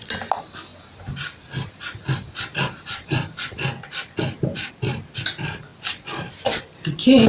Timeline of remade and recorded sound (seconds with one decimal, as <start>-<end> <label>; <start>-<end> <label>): 0.0-0.7 remade; 0.7-4.7 recorded; 4.7-7.3 remade